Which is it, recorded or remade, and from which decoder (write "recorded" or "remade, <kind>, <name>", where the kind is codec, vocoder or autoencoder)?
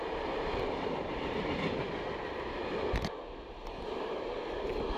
recorded